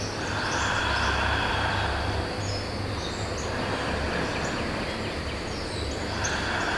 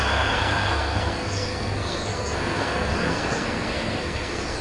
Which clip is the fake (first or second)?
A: second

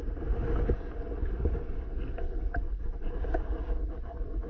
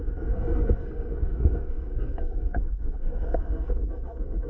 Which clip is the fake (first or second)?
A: second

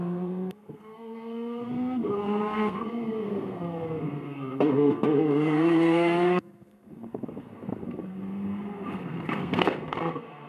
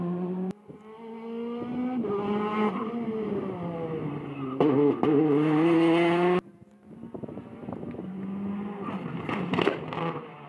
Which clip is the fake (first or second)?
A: first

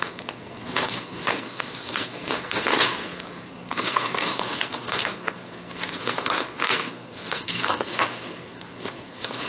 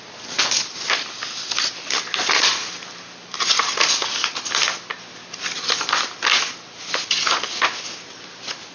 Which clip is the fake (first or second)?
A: first